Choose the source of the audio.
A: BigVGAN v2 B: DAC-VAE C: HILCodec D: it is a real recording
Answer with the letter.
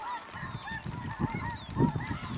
D